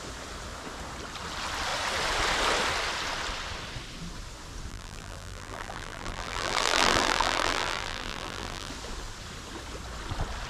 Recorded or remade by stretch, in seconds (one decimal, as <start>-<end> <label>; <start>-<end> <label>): 0.0-4.7 recorded; 4.7-8.7 remade; 8.7-10.5 recorded